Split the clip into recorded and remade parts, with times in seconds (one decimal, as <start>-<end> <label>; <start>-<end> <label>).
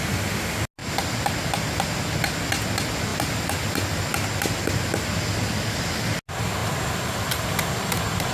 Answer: 0.0-3.1 recorded; 3.1-4.0 remade; 4.0-6.6 recorded; 6.6-7.9 remade; 7.9-8.3 recorded